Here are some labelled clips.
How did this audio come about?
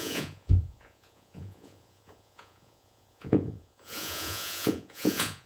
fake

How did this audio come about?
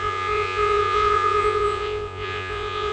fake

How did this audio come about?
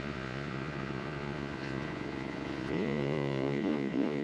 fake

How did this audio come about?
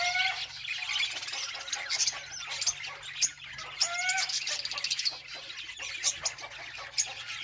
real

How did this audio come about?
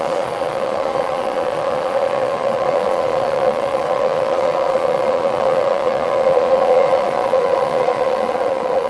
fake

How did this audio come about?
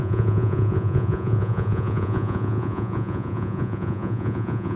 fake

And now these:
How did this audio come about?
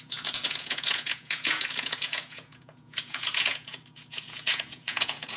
fake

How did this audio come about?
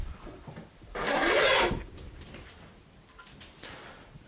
real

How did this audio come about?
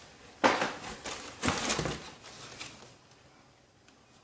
real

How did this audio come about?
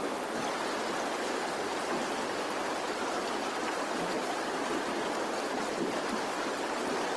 real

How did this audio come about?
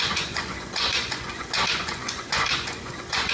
fake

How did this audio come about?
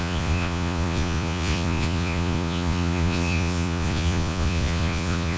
fake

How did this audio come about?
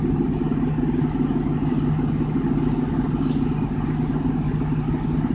real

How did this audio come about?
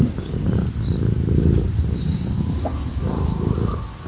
real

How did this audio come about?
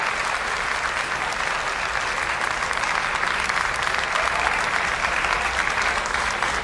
real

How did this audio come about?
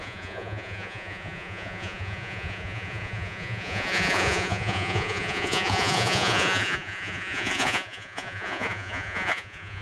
fake